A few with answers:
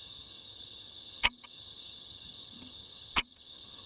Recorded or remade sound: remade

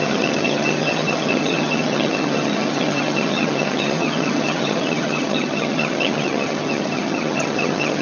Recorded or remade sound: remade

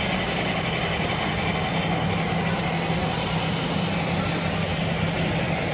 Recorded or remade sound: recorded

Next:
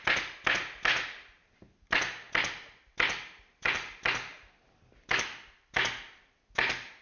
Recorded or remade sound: recorded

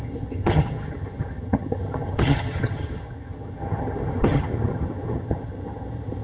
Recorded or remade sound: remade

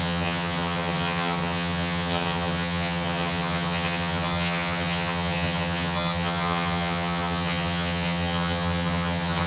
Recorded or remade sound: remade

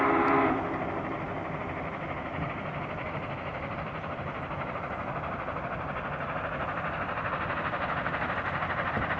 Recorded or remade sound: recorded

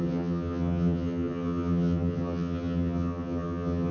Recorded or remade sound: remade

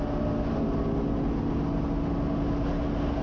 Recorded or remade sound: recorded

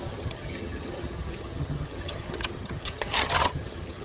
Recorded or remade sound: remade